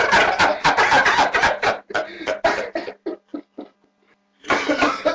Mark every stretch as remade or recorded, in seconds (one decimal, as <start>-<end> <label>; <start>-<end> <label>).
0.0-5.1 recorded